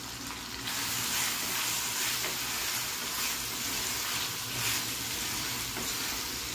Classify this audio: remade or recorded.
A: recorded